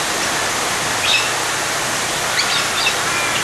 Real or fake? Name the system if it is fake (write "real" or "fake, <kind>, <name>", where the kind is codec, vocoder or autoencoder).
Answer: real